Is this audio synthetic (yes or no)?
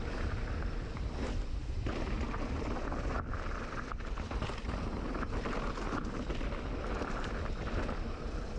yes